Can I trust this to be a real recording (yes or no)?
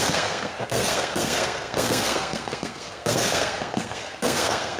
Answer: no